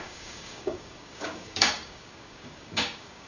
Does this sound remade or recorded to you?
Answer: remade